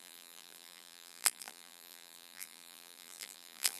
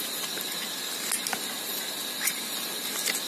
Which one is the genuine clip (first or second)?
second